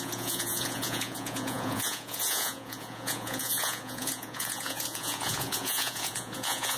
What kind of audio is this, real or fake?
fake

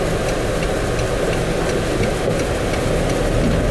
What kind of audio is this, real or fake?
real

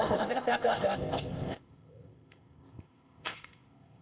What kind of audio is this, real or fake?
fake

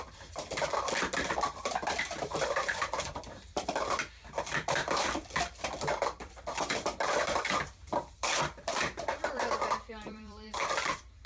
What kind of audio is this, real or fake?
fake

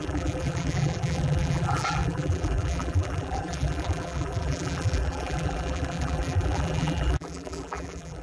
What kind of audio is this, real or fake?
fake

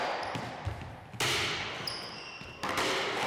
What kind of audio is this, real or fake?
real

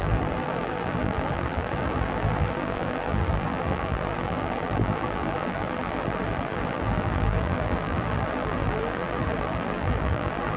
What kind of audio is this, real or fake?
fake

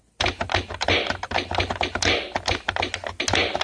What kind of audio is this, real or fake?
real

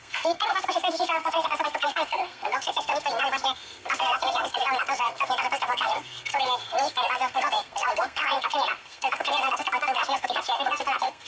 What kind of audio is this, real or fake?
fake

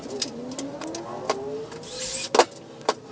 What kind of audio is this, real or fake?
real